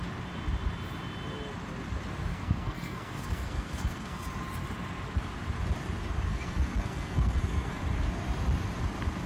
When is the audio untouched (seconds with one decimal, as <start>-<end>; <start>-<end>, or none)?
0.0-2.3; 4.3-6.3; 7.8-9.3